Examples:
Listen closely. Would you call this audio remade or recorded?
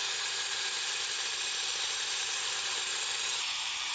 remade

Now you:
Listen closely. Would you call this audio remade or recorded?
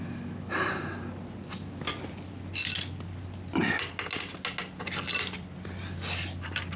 recorded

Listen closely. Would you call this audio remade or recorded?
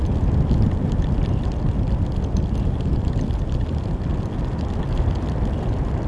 recorded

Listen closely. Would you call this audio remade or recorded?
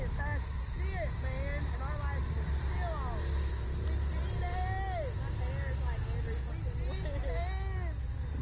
recorded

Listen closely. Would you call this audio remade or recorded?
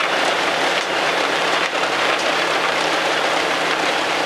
remade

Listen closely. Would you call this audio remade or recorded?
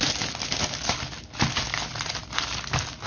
recorded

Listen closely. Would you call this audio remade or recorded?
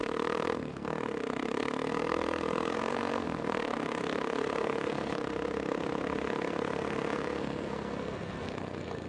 remade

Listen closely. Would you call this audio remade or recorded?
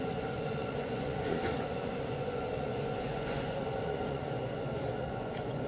remade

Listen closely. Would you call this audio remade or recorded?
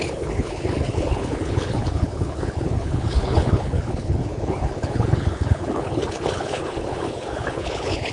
remade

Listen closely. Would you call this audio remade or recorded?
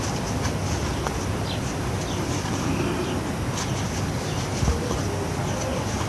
recorded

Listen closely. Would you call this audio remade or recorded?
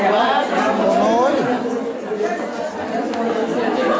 recorded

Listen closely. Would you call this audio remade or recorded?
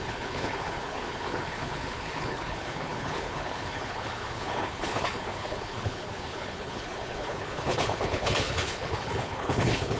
remade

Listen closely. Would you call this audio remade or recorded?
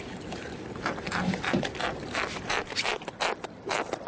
remade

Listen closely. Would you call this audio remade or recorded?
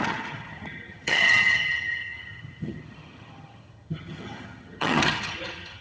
remade